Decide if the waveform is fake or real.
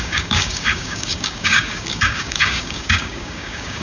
fake